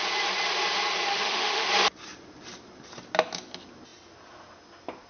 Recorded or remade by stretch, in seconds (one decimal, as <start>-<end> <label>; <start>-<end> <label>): 0.0-1.1 recorded; 1.1-1.7 remade; 1.7-5.1 recorded